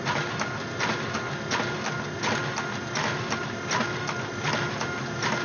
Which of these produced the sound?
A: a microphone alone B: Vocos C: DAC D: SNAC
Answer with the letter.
A